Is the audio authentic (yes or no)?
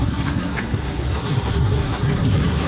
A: no